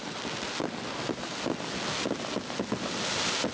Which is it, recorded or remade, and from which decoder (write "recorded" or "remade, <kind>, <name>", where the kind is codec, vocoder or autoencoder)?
recorded